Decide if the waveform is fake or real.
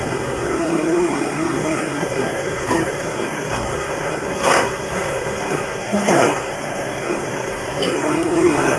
fake